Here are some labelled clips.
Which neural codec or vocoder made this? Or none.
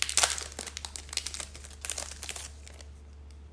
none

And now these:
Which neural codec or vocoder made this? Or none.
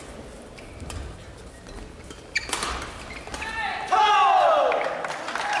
none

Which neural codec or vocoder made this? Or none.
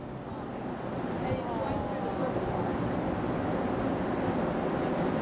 none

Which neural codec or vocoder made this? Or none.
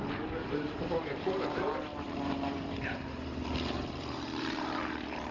vocoder, BigVGAN v2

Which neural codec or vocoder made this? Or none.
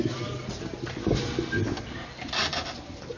none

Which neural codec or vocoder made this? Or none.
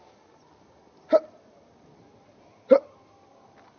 none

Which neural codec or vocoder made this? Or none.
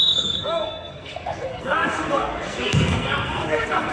codec, SNAC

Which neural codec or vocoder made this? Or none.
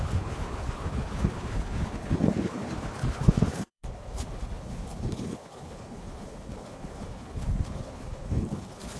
codec, HILCodec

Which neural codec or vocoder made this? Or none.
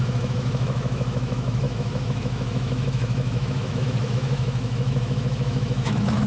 autoencoder, DAC-VAE